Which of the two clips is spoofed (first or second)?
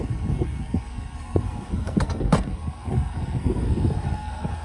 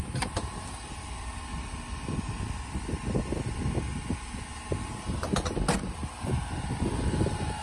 first